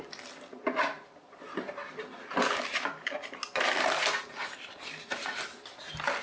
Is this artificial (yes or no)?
no